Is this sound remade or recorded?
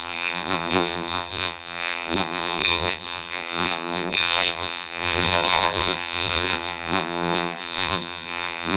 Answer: remade